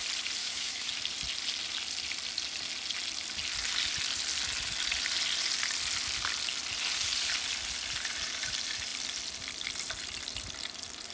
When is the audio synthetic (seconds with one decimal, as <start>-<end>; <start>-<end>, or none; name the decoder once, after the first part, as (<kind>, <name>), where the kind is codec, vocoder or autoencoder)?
0.4-0.9 (autoencoder, DAC-VAE)